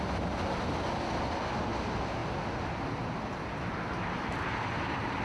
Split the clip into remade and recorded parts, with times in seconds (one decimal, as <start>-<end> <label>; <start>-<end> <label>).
0.0-5.2 recorded